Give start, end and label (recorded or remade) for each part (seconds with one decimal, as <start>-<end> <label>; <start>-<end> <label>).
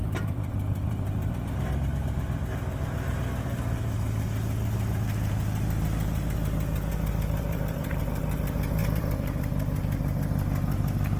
0.0-1.3 remade; 1.3-6.9 recorded; 6.9-8.0 remade; 8.0-8.8 recorded; 8.8-10.2 remade; 10.2-11.2 recorded